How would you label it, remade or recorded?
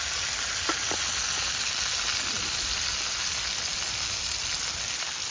recorded